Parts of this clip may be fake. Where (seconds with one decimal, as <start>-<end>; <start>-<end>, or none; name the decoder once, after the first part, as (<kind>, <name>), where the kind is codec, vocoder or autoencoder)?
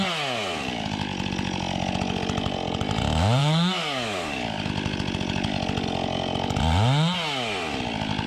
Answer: 3.4-4.7 (codec, DAC)